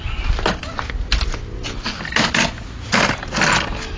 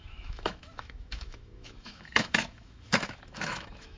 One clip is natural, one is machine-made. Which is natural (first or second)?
first